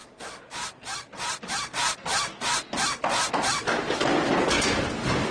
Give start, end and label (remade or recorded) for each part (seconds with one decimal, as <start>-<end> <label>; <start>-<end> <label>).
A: 0.0-5.3 recorded